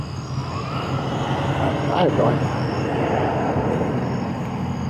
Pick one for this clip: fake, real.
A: real